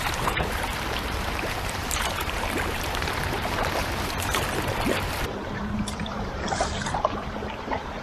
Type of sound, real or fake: fake